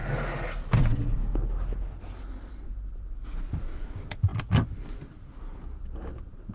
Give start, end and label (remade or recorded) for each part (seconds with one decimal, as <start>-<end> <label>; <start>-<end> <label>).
0.0-6.5 recorded